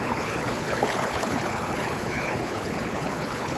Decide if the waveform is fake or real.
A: fake